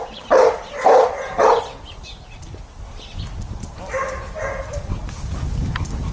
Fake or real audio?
real